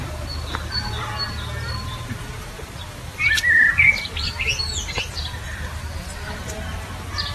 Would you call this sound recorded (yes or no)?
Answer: yes